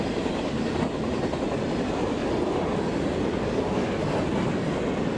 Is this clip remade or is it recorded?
recorded